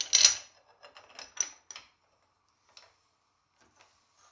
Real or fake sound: real